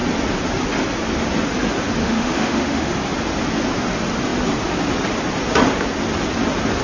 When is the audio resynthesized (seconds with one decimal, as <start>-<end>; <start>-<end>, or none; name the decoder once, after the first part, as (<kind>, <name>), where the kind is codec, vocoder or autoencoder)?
2.0-2.9 (autoencoder, DAC-VAE)